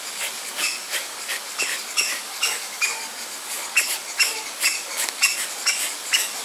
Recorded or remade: remade